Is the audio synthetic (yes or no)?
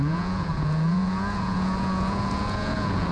yes